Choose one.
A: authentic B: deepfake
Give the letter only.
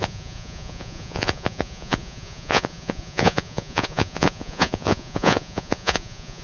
B